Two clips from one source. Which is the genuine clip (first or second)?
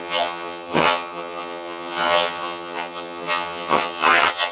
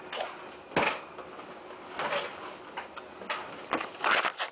second